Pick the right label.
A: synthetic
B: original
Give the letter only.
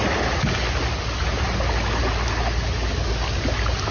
B